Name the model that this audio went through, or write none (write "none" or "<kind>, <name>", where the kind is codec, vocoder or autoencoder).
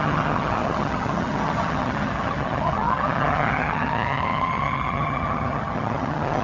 vocoder, HiFi-GAN